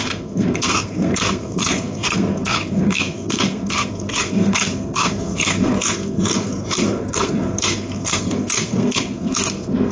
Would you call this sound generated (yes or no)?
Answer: yes